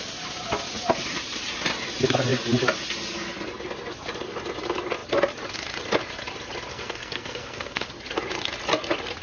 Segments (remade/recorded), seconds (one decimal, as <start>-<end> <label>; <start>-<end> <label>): 0.0-6.7 recorded; 6.7-7.9 remade; 7.9-9.2 recorded